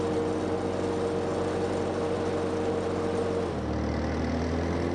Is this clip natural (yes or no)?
yes